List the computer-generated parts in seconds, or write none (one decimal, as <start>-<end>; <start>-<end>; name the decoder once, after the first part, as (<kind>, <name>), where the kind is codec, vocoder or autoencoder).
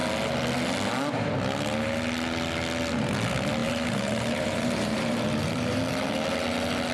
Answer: 3.6-5.8 (vocoder, BigVGAN v2)